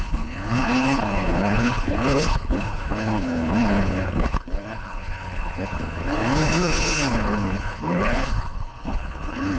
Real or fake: fake